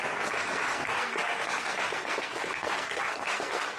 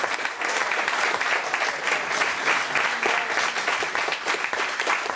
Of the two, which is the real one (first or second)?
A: second